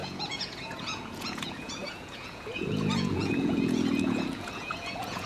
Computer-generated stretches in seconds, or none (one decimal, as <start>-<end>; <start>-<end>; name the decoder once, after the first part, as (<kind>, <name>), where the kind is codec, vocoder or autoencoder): 0.0-5.3 (vocoder, Vocos)